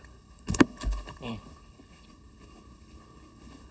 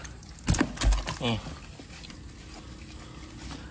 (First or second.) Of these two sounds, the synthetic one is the first